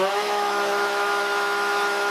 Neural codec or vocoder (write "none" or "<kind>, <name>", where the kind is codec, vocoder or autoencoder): autoencoder, DAC-VAE